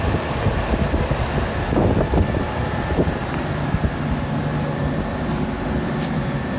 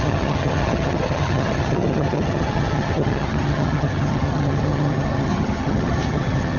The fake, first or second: second